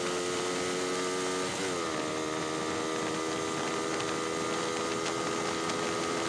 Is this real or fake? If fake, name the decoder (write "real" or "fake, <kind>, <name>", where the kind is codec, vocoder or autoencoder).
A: real